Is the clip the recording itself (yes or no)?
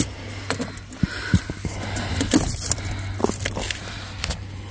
yes